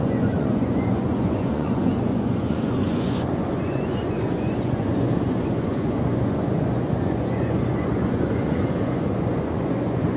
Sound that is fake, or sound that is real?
fake